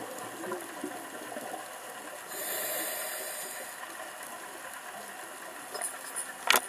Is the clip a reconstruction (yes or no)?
no